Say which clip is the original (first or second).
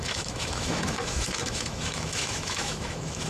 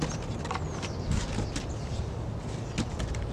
second